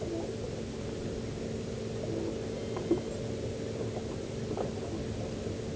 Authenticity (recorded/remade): recorded